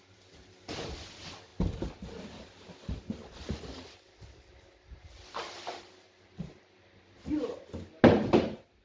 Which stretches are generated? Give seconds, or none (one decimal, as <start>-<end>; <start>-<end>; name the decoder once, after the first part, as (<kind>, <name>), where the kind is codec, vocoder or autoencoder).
none